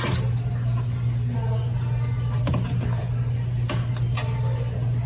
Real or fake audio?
real